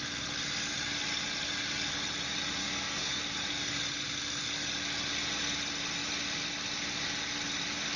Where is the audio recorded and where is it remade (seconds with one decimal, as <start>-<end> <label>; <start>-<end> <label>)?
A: 0.0-2.6 recorded; 2.6-3.2 remade; 3.2-8.0 recorded